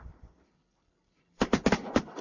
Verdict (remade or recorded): remade